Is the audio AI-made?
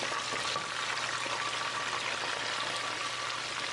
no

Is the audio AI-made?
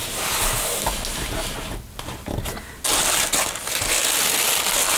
no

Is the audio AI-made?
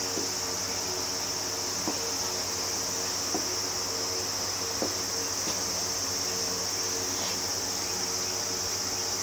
no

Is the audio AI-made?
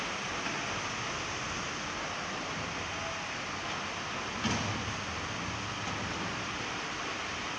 no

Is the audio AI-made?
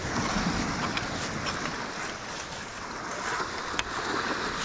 no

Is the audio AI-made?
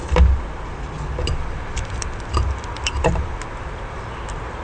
no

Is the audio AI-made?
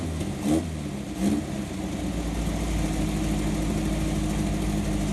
no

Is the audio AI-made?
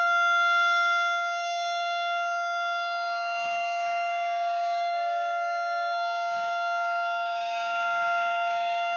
yes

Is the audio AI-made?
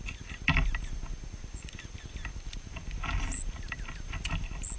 no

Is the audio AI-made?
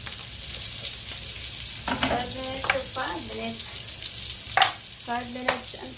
no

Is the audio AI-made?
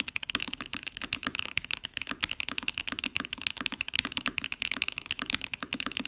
yes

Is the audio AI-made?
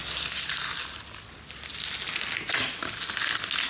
no